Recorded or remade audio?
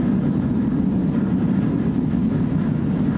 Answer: recorded